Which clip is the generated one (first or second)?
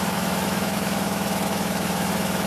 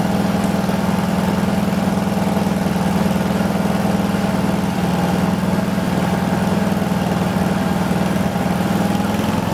first